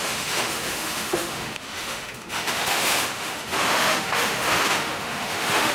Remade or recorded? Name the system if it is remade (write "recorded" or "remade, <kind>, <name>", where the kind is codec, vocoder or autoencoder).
remade, autoencoder, DAC-VAE